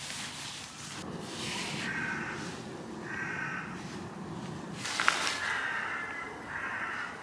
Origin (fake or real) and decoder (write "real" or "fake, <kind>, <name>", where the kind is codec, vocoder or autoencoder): real